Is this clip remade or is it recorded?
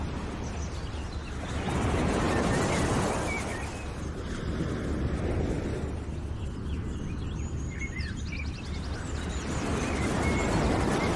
recorded